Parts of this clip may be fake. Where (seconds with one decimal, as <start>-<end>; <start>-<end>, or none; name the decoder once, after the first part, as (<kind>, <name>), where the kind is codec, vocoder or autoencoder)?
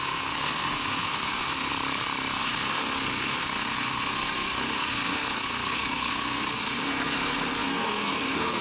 0.0-1.7 (codec, SNAC); 2.4-8.6